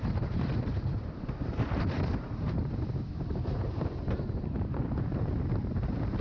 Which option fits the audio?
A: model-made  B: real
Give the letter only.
A